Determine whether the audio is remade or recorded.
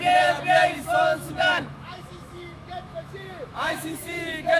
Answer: remade